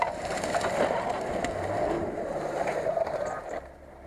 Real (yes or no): no